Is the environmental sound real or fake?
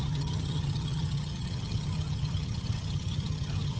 fake